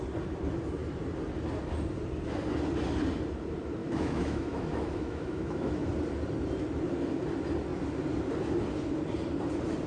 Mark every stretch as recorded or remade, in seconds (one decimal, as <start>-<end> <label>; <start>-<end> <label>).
0.0-3.8 recorded; 3.8-5.7 remade; 5.7-9.9 recorded